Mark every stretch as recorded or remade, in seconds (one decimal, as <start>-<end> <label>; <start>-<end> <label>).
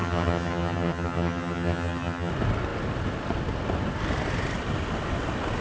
0.0-2.3 remade; 2.3-5.6 recorded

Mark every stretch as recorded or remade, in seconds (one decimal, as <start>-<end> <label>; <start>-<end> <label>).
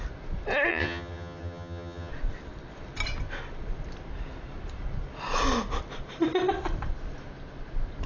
0.0-0.7 recorded; 0.7-2.1 remade; 2.1-8.1 recorded